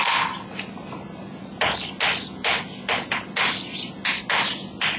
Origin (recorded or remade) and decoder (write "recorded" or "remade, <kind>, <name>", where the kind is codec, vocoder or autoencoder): recorded